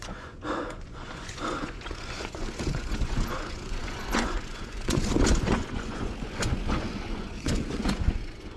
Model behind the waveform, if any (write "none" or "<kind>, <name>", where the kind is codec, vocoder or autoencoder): vocoder, Vocos